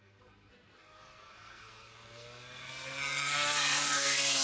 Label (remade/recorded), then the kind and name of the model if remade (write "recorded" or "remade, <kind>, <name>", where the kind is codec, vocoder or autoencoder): remade, codec, SNAC